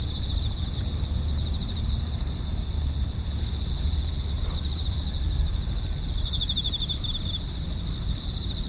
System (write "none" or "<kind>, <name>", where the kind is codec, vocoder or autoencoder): vocoder, BigVGAN v2